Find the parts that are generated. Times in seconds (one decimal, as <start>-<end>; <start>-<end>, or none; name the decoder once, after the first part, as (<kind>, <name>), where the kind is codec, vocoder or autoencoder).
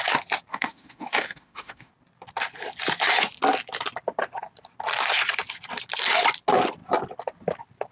0.5-1.9 (autoencoder, DAC-VAE)